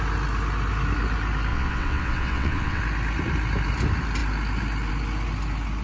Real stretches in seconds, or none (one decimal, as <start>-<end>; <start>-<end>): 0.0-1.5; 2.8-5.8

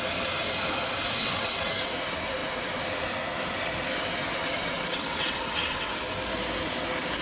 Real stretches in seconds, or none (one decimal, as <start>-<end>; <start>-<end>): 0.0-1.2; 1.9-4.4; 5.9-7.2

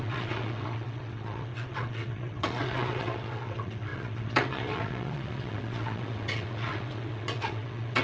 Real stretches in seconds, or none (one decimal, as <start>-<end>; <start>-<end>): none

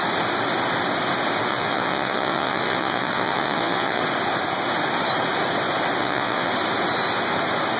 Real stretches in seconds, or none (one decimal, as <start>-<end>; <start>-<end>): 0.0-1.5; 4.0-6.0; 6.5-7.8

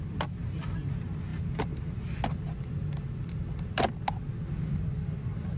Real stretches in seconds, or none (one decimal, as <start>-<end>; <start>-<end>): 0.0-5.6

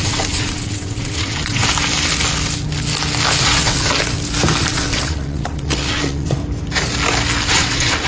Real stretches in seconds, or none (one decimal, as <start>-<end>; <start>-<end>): 1.6-3.4; 4.0-4.7; 6.4-7.5

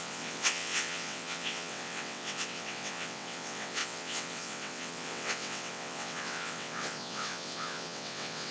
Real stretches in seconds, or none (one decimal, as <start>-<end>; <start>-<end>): none